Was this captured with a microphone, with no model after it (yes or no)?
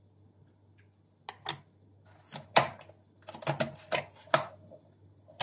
yes